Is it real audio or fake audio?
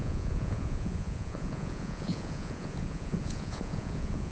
fake